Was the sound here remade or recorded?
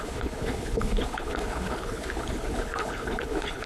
remade